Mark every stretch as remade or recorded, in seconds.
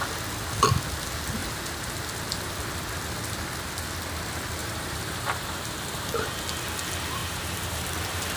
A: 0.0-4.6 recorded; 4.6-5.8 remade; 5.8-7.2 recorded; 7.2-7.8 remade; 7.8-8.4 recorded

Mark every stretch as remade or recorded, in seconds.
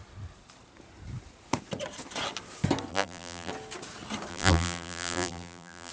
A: 0.0-2.9 recorded; 2.9-3.5 remade; 3.5-4.3 recorded; 4.3-5.9 remade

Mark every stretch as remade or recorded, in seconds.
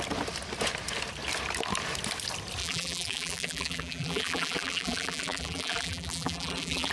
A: 0.0-2.6 recorded; 2.6-6.9 remade